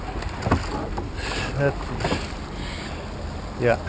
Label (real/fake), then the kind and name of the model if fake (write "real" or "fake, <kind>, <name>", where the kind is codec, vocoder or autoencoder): real